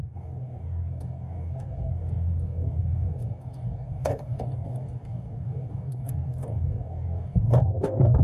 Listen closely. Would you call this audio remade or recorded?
remade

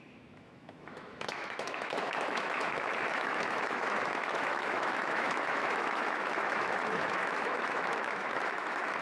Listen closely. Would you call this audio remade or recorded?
remade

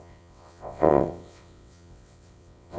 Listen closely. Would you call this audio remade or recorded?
remade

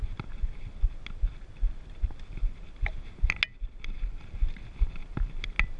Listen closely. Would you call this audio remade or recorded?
recorded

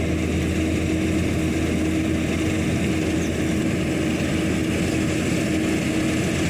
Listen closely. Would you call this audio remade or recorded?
recorded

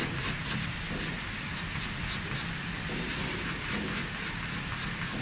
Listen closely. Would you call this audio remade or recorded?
recorded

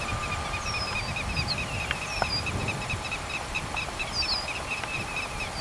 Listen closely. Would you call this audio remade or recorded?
recorded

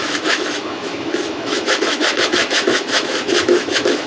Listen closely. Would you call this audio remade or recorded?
remade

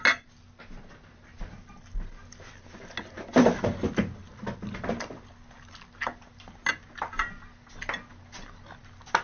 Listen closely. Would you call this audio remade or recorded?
recorded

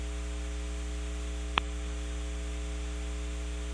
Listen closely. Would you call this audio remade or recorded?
recorded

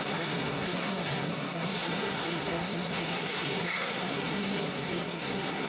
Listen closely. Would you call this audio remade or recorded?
remade